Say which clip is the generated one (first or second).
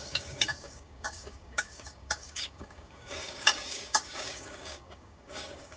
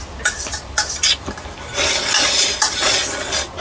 first